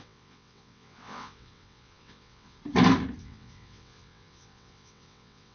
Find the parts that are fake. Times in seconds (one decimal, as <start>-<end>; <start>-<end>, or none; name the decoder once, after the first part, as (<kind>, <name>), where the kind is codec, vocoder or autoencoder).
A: 0.0-2.6 (vocoder, WaveNeXt); 3.2-5.5